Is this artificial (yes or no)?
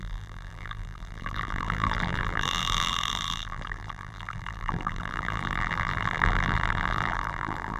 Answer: yes